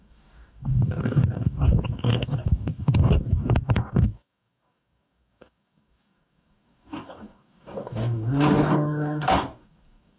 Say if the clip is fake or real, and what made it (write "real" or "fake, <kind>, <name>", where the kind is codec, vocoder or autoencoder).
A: fake, codec, DAC